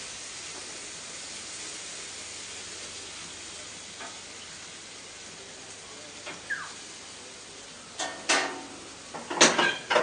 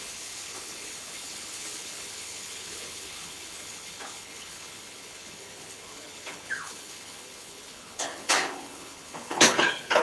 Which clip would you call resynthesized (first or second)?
second